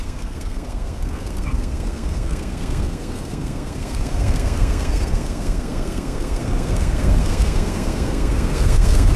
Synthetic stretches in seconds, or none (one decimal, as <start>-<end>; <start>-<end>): 0.0-9.2